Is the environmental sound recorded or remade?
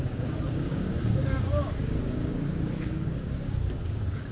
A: remade